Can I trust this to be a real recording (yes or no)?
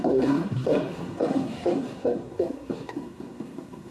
no